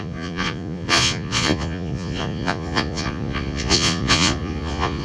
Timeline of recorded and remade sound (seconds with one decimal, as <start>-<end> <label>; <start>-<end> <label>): 0.0-5.0 remade